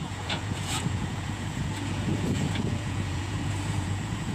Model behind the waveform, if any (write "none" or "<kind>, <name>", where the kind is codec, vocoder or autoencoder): vocoder, Vocos